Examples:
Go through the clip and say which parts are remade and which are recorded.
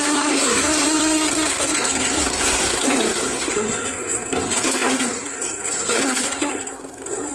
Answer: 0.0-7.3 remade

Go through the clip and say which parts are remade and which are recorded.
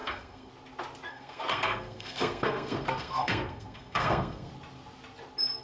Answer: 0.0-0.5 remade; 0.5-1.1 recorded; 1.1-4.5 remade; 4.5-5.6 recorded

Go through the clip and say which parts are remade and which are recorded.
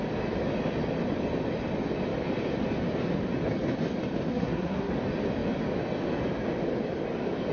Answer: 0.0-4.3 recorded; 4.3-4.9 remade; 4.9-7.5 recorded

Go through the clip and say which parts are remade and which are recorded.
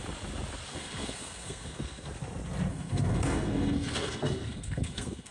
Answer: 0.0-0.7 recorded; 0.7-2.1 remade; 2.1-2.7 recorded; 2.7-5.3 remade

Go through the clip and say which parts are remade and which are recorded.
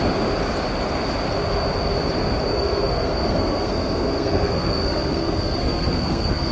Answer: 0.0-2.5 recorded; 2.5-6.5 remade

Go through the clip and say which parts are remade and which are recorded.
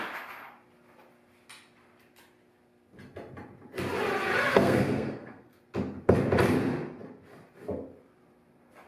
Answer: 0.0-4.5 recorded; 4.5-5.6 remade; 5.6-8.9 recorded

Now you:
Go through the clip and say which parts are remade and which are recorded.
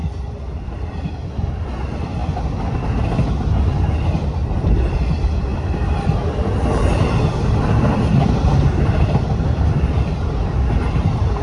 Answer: 0.0-11.4 recorded